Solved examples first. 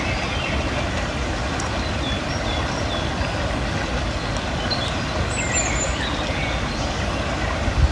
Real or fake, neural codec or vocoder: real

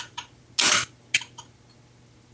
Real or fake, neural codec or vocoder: real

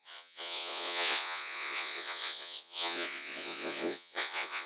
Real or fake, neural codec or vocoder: fake, vocoder, Vocos